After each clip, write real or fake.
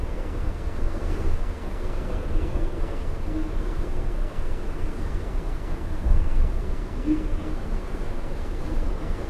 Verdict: fake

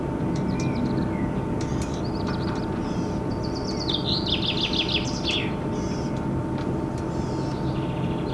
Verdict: real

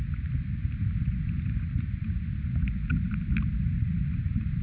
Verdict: real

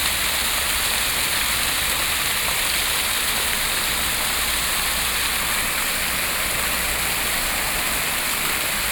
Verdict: real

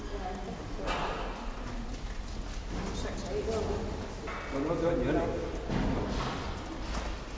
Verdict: real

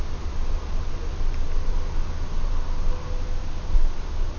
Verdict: real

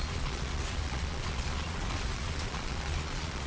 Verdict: fake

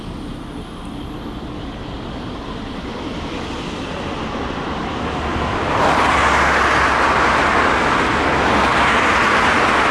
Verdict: real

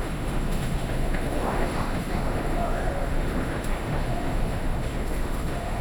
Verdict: fake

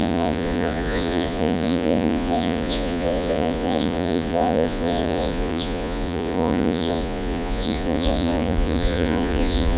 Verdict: fake